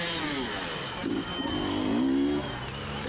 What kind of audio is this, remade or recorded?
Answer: recorded